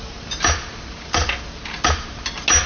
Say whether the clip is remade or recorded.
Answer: recorded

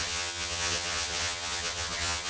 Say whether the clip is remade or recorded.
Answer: remade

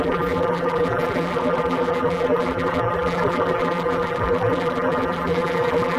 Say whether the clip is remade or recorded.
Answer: remade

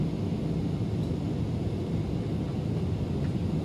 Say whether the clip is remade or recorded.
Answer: recorded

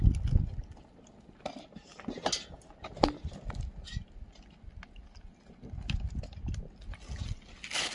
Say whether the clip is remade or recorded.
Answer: recorded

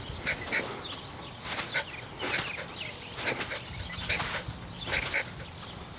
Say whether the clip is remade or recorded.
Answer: recorded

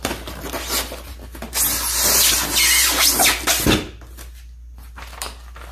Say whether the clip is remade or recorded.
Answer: recorded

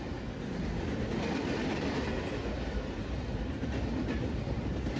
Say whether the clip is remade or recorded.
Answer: recorded